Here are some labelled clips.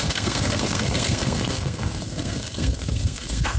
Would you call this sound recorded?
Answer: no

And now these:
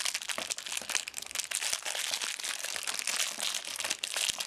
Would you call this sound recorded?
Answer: yes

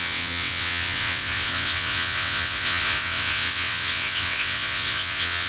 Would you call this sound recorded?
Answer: no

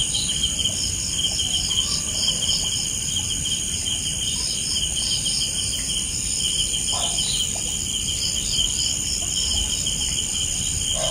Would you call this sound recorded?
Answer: no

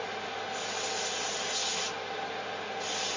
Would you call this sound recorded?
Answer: yes